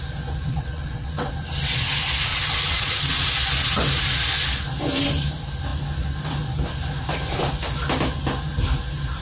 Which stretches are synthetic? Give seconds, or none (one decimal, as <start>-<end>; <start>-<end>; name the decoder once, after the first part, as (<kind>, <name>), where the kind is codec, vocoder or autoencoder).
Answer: 0.5-1.3 (vocoder, WaveNeXt); 2.3-3.3